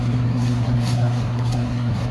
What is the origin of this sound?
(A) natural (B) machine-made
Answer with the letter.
B